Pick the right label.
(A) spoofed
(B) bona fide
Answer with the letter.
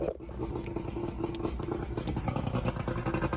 B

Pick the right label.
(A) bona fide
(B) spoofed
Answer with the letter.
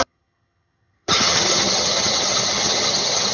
B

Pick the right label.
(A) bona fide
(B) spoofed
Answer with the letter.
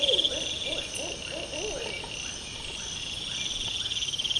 A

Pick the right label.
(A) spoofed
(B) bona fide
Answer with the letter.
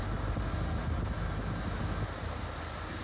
B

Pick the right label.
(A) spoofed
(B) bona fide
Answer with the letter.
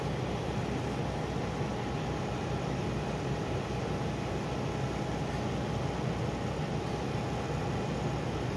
B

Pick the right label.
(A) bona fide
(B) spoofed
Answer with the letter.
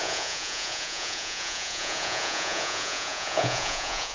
B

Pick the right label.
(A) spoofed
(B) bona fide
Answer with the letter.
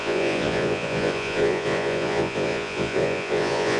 A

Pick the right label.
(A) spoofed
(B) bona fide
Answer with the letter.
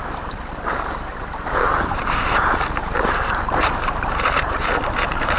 A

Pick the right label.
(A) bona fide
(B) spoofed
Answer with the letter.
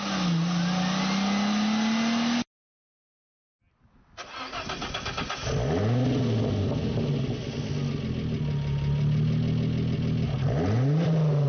A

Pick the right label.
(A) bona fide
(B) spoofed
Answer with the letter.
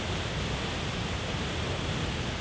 A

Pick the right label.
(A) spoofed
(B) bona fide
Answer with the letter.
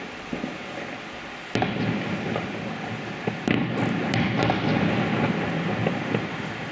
B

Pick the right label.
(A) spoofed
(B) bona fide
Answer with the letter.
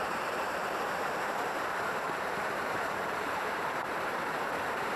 A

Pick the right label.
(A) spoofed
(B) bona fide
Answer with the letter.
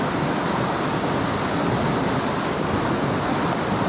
B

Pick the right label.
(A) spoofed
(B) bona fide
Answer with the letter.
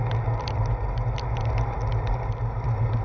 B